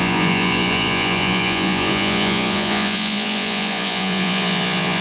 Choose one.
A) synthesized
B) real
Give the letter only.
A